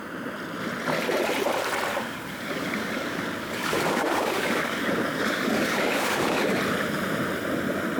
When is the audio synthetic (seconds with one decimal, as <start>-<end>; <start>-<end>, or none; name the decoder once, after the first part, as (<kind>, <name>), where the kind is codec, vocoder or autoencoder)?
1.9-6.6 (codec, DAC)